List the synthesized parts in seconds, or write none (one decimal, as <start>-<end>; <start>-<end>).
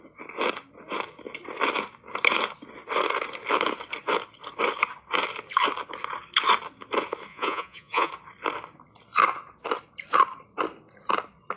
7.3-8.1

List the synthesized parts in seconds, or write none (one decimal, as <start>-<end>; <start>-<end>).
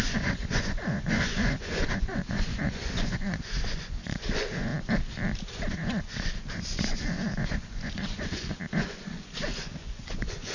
0.0-4.7; 5.7-10.5